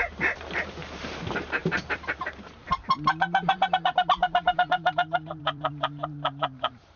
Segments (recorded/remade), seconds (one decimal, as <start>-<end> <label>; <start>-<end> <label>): 0.0-7.0 remade